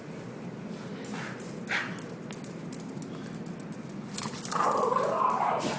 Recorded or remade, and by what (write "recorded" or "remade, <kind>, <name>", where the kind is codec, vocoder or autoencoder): recorded